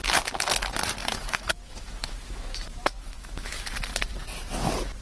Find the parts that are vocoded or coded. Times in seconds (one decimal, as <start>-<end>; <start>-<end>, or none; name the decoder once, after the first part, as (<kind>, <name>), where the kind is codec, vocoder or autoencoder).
1.0-3.7 (autoencoder, DAC-VAE)